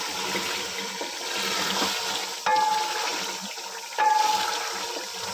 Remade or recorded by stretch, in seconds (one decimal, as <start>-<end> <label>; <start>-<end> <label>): 0.0-5.3 recorded